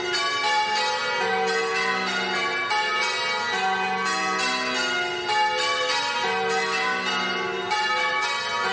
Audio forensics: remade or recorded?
recorded